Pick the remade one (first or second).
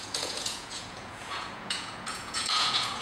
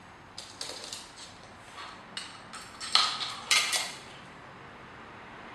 first